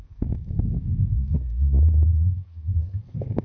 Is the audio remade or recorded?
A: remade